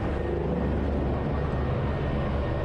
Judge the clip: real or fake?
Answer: real